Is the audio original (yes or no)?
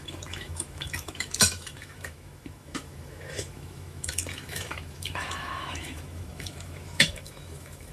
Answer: no